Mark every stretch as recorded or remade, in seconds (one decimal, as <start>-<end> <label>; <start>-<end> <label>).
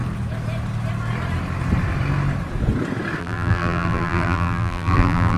0.0-3.2 recorded; 3.2-5.4 remade